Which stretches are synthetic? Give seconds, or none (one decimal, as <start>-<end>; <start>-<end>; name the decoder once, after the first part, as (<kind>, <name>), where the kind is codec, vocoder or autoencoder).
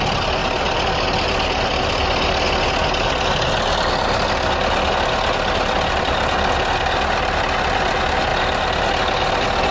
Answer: none